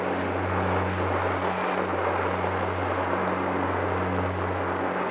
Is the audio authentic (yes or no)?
yes